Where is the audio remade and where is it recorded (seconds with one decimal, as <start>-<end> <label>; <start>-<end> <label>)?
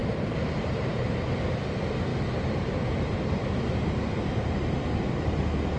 0.0-1.3 remade; 1.3-2.1 recorded; 2.1-5.8 remade